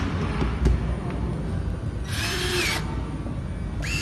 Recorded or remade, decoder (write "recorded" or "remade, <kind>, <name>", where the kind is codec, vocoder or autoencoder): recorded